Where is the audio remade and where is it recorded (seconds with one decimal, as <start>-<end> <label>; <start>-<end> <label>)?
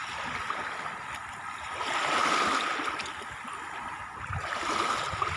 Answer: 0.0-5.4 recorded